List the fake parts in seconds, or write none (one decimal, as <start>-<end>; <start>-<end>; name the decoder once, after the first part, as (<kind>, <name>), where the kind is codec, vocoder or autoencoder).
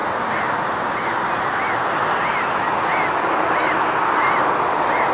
none